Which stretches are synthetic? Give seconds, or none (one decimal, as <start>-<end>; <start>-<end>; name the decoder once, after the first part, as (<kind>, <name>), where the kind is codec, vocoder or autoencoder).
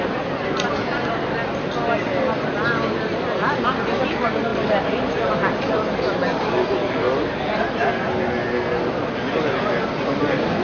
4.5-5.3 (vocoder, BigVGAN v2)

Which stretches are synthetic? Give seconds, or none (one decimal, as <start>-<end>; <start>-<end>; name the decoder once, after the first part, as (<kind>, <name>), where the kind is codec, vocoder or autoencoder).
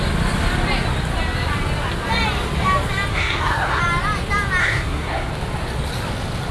3.1-3.8 (codec, SNAC); 4.6-5.3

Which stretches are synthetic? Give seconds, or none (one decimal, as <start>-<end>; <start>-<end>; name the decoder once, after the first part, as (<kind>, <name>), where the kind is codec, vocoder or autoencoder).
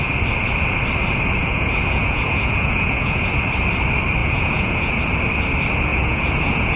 1.4-3.3 (vocoder, Vocos); 4.2-5.0; 5.9-6.8